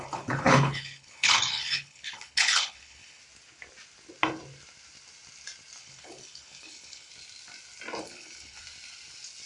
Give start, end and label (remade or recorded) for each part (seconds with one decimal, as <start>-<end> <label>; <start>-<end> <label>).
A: 0.0-3.2 remade; 3.2-5.8 recorded; 5.8-7.1 remade; 7.1-8.0 recorded; 8.0-8.6 remade; 8.6-9.5 recorded